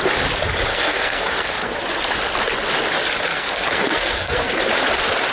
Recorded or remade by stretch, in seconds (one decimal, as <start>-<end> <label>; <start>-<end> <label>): 0.0-0.7 recorded; 0.7-1.8 remade; 1.8-3.3 recorded; 3.3-4.6 remade; 4.6-5.3 recorded

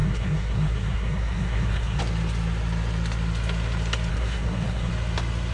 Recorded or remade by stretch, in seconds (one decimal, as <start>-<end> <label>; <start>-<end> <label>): 0.0-2.0 remade; 2.0-4.1 recorded; 4.1-4.9 remade; 4.9-5.5 recorded

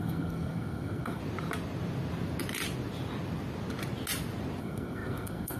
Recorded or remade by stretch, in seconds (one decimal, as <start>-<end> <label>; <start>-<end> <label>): 0.0-1.2 remade; 1.2-4.6 recorded; 4.6-5.6 remade

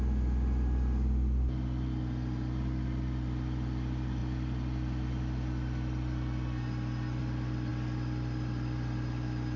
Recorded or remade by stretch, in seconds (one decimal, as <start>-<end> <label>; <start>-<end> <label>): 0.0-9.6 recorded

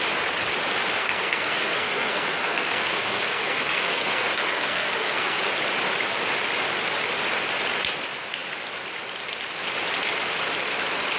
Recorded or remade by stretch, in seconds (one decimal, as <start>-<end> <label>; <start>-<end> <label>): 0.0-1.0 recorded; 1.0-5.5 remade; 5.5-11.2 recorded

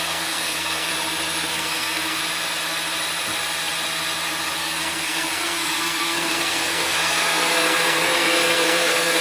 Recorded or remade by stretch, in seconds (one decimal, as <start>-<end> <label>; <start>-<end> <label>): 0.0-0.9 remade; 0.9-1.5 recorded; 1.5-2.2 remade; 2.2-4.6 recorded; 4.6-9.2 remade

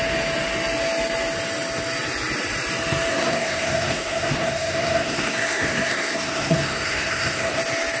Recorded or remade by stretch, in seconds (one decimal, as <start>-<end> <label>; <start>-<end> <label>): 0.0-3.1 recorded; 3.1-7.6 remade; 7.6-8.0 recorded